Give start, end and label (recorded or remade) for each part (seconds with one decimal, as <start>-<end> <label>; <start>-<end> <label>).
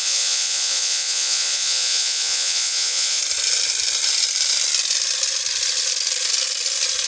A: 0.0-3.2 remade; 3.2-7.1 recorded